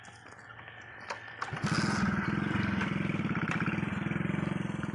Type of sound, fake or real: real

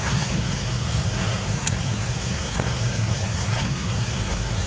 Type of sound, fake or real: fake